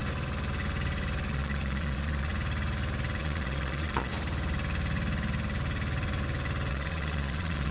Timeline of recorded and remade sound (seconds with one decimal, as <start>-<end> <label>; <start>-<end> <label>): 0.0-1.3 recorded; 1.3-2.3 remade; 2.3-3.2 recorded; 3.2-4.1 remade; 4.1-6.7 recorded; 6.7-7.7 remade